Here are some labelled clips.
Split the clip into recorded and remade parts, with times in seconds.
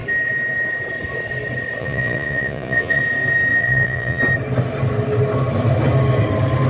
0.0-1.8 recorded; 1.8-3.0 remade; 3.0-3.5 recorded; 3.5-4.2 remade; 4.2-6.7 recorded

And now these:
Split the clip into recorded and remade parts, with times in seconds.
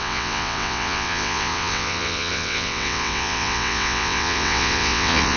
0.0-5.4 remade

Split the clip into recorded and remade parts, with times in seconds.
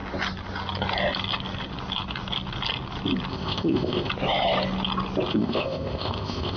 0.0-3.3 recorded; 3.3-4.1 remade; 4.1-5.3 recorded; 5.3-6.6 remade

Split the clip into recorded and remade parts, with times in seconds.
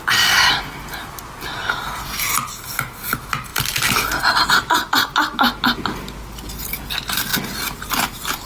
0.0-8.5 recorded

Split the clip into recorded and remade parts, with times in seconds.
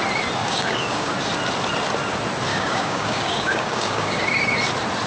0.0-0.4 recorded; 0.4-1.1 remade; 1.1-2.5 recorded; 2.5-4.2 remade; 4.2-5.1 recorded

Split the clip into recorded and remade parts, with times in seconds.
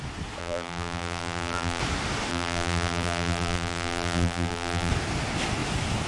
0.0-0.4 recorded; 0.4-1.8 remade; 1.8-2.3 recorded; 2.3-4.9 remade; 4.9-6.1 recorded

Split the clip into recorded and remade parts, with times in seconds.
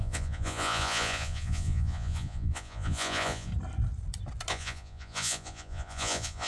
0.0-3.5 remade; 3.5-4.5 recorded; 4.5-6.5 remade